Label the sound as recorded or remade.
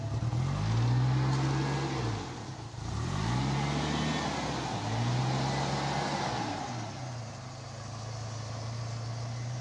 recorded